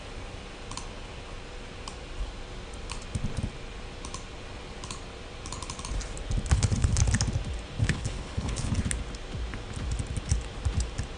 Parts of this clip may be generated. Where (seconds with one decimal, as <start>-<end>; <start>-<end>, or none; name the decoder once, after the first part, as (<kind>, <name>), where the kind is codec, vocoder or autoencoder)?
6.5-7.0 (codec, HILCodec); 7.8-8.7